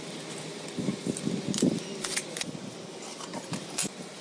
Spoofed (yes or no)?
no